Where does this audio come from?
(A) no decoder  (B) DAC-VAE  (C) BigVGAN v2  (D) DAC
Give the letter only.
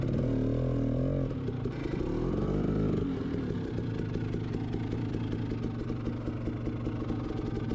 A